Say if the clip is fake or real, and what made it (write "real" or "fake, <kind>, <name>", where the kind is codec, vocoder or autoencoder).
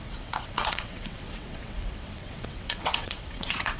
fake, vocoder, WaveNeXt